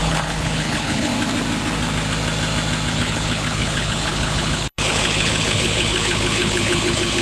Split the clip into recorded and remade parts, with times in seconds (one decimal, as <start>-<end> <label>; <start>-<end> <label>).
0.0-1.1 remade; 1.1-2.9 recorded; 2.9-7.2 remade